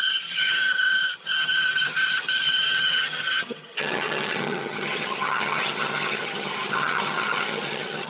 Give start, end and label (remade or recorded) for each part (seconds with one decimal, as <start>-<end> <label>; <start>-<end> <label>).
0.0-8.1 remade